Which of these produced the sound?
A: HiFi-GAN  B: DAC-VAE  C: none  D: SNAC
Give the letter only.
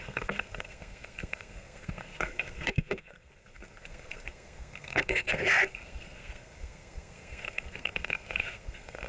D